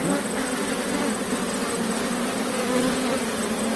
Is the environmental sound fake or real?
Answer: real